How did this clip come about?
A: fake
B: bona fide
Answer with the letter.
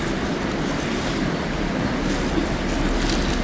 B